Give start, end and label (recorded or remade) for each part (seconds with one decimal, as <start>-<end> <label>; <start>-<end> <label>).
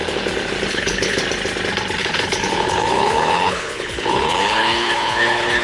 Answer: 0.0-0.7 recorded; 0.7-1.2 remade; 1.2-2.0 recorded; 2.0-5.6 remade